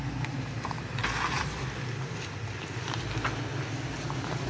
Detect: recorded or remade recorded